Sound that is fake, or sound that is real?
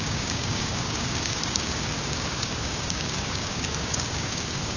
fake